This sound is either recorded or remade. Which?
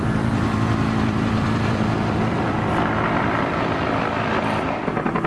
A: remade